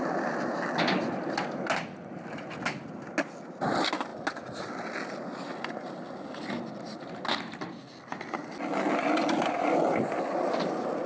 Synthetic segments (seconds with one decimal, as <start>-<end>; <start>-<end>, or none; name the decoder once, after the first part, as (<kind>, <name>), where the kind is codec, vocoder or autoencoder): none